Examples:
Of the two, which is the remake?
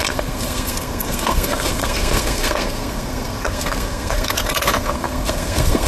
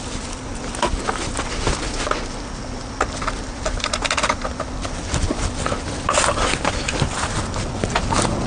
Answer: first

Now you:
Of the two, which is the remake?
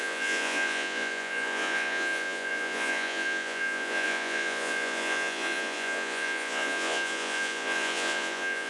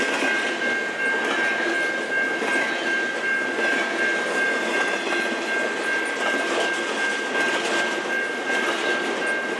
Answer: first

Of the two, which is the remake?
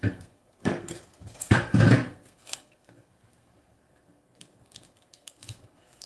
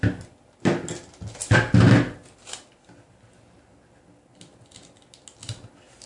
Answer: first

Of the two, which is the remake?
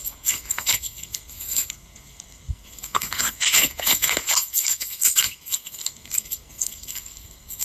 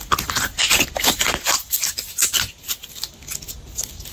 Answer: first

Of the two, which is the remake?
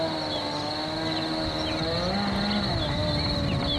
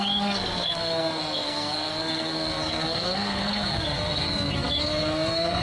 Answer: second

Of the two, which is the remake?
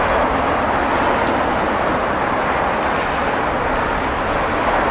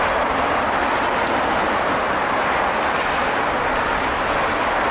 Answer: second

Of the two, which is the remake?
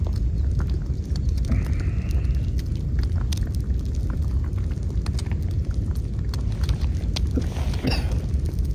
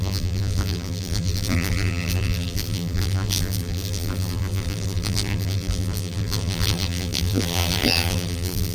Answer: second